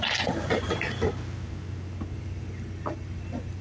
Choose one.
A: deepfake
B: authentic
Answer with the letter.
B